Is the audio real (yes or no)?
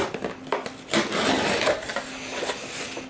yes